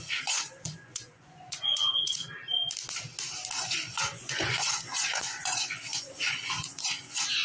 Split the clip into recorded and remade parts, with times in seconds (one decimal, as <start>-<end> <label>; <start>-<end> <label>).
0.0-2.2 remade; 2.2-3.6 recorded; 3.6-7.4 remade